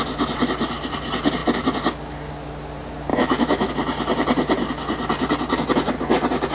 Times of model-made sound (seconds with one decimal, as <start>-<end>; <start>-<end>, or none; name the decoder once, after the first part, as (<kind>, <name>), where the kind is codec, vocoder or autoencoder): 3.1-3.7 (autoencoder, DAC-VAE)